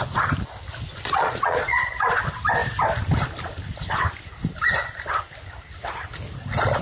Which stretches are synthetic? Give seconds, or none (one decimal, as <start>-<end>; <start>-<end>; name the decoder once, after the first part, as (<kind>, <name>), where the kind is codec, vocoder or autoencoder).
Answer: 0.9-2.2 (vocoder, Vocos)

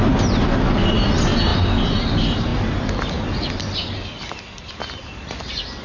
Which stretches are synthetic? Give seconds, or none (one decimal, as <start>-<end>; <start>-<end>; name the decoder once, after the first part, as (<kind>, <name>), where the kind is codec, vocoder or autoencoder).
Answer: none

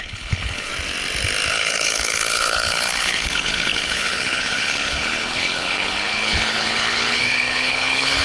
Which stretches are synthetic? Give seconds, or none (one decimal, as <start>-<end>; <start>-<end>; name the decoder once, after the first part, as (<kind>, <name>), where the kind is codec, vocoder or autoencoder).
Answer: 0.0-0.7 (codec, HILCodec); 1.5-8.2